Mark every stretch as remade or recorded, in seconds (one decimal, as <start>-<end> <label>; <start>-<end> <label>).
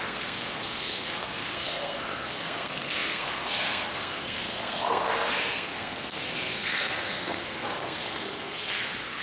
0.0-9.2 remade